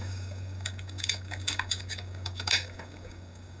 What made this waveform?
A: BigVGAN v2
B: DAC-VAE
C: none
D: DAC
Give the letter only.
D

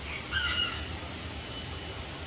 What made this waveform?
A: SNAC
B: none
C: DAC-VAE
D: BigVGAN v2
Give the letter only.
B